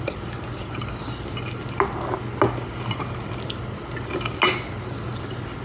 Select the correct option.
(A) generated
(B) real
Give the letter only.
B